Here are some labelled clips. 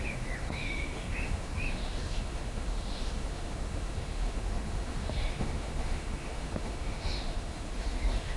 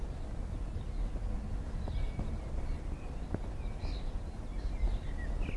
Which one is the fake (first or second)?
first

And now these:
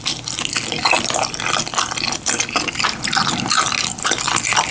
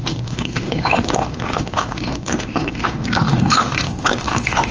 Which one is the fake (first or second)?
second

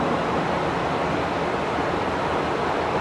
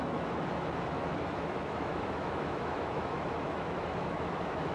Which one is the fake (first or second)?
second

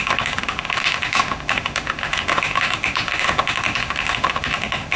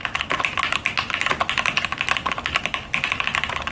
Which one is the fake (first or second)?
first